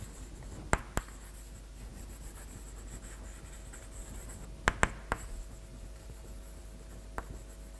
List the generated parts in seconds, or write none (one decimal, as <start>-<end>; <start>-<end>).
5.7-6.3